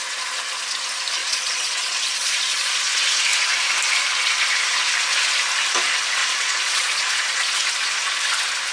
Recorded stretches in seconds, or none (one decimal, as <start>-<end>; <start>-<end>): 0.0-1.2; 2.8-6.2; 7.4-8.7